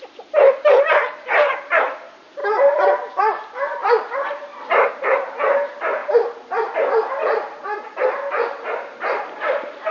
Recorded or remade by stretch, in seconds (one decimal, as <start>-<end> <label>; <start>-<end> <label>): 0.0-6.0 remade; 6.0-8.3 recorded; 8.3-9.9 remade